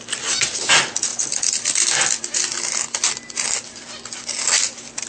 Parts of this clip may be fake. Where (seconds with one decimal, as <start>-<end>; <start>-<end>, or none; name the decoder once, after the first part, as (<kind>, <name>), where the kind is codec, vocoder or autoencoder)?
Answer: none